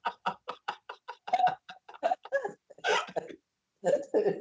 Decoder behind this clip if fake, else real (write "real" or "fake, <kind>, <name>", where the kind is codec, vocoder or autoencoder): fake, vocoder, BigVGAN v2